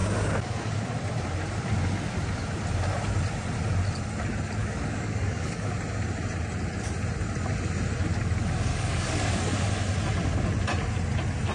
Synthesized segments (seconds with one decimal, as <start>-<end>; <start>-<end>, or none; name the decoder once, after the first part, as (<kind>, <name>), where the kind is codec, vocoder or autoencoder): 0.0-0.8 (codec, DAC); 4.6-5.7; 8.7-9.7